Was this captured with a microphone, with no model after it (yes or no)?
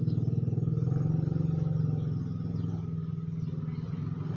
yes